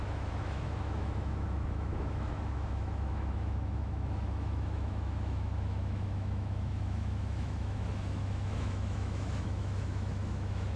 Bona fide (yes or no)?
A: no